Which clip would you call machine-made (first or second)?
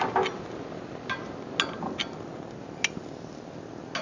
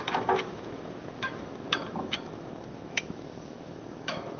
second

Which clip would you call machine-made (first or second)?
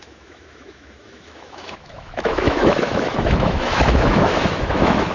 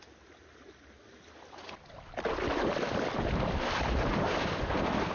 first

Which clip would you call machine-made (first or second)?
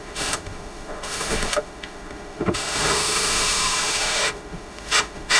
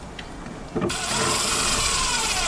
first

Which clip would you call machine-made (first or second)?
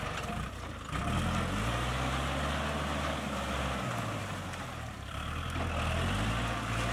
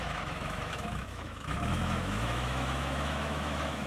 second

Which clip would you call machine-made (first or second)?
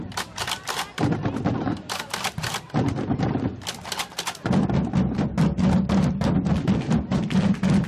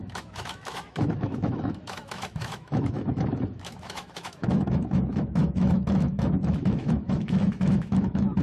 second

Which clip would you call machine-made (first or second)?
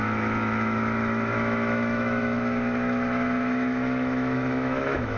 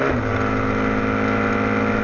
first